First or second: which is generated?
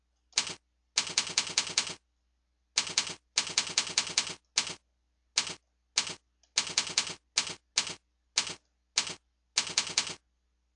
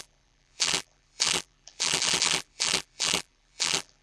second